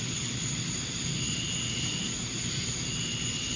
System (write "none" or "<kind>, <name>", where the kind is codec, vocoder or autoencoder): none